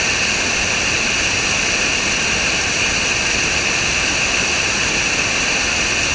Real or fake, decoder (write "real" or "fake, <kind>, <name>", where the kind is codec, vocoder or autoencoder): real